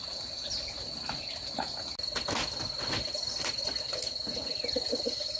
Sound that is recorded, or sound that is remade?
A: recorded